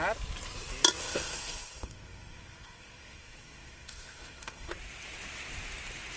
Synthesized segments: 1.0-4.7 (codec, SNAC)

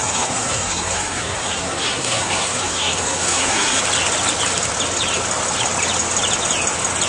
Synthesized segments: 0.0-3.8 (codec, SNAC)

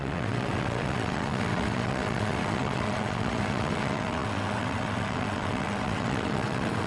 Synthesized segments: 0.0-6.9 (vocoder, WaveNeXt)

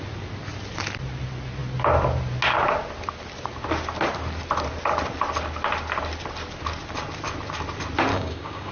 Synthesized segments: 8.1-8.7 (codec, DAC)